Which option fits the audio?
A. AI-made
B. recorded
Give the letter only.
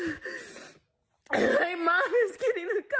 B